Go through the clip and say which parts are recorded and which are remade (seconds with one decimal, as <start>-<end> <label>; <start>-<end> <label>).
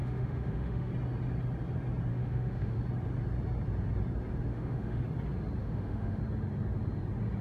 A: 0.0-0.9 remade; 0.9-2.1 recorded; 2.1-2.8 remade; 2.8-4.5 recorded; 4.5-5.0 remade; 5.0-5.6 recorded; 5.6-6.2 remade; 6.2-7.4 recorded